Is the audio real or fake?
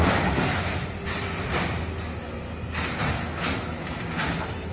real